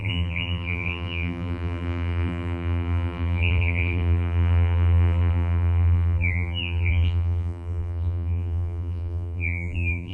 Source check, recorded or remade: remade